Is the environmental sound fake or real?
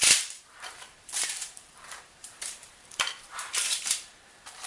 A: fake